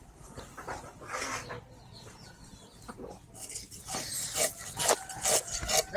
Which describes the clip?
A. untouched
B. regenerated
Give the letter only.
A